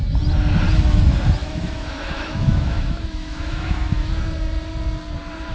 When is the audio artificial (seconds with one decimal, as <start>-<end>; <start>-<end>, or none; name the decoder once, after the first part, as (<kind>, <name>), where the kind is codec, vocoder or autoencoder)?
1.4-4.1 (autoencoder, DAC-VAE)

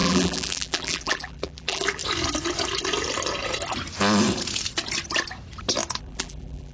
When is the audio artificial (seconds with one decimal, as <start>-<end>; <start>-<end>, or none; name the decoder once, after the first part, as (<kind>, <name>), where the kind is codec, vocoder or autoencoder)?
0.0-2.0 (vocoder, BigVGAN v2); 6.0-6.7

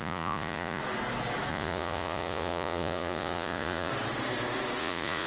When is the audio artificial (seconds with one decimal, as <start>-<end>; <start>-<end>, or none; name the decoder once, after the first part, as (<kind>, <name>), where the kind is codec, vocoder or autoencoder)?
0.0-0.8 (vocoder, Vocos); 1.5-3.9; 4.8-5.3

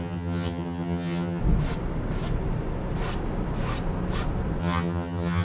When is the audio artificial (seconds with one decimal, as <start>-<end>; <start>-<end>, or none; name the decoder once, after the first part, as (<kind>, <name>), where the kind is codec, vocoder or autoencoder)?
0.0-1.4 (vocoder, HiFi-GAN); 4.6-5.4

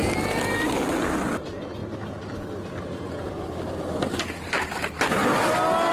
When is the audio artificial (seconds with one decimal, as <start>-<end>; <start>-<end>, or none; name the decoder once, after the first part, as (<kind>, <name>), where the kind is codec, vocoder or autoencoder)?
none

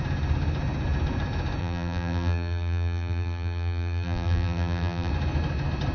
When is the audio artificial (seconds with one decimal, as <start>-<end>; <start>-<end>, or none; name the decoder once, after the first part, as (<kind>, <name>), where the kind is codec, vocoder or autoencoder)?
1.6-5.1 (vocoder, BigVGAN v2)

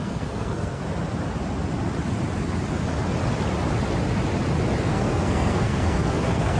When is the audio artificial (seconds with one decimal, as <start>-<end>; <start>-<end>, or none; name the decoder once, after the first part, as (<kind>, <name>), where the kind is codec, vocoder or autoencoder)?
0.0-0.8 (codec, SNAC); 4.8-6.6